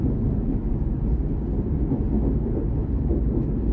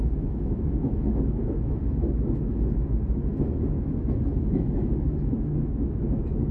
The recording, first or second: first